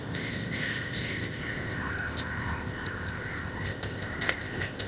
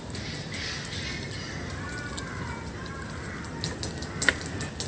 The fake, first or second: first